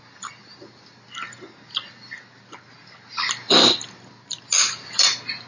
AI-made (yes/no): no